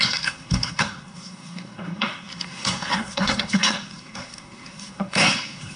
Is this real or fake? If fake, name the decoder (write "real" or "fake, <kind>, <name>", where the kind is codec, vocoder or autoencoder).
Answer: fake, codec, SNAC